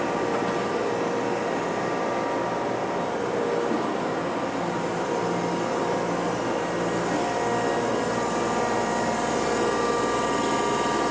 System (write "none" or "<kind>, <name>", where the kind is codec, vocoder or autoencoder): none